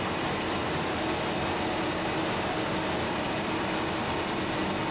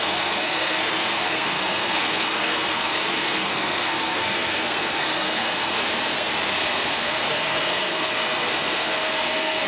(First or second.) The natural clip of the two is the first